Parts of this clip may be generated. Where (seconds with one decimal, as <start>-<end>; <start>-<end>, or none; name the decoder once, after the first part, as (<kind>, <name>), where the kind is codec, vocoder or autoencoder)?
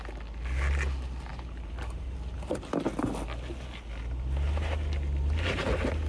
1.3-2.6 (vocoder, BigVGAN v2)